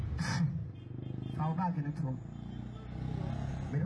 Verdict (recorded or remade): recorded